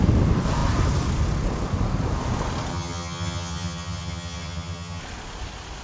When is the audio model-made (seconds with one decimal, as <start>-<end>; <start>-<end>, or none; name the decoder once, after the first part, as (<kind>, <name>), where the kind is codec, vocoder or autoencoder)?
2.7-5.0 (vocoder, HiFi-GAN)